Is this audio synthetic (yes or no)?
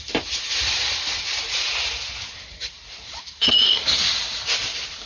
yes